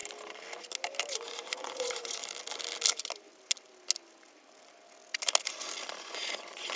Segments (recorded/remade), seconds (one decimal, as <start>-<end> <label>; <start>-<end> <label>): 0.0-1.1 recorded; 1.1-2.2 remade; 2.2-6.0 recorded; 6.0-6.8 remade